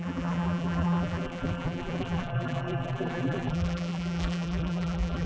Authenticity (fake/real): fake